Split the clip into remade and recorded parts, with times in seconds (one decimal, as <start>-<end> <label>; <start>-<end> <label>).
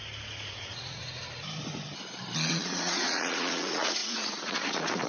0.0-0.5 recorded; 0.5-1.0 remade; 1.0-2.5 recorded; 2.5-5.1 remade